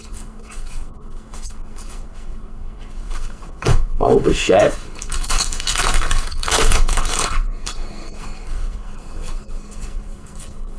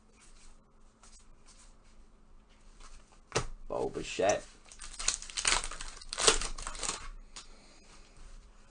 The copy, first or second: first